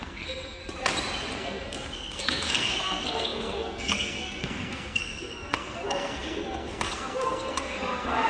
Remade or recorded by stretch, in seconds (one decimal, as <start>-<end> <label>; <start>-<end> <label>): 0.0-0.6 remade; 0.6-1.3 recorded; 1.3-8.3 remade